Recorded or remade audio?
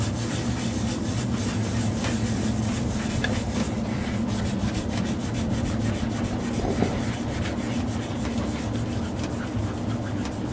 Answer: recorded